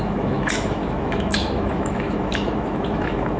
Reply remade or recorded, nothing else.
remade